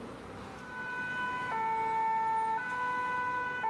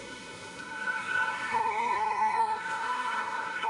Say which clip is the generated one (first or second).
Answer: second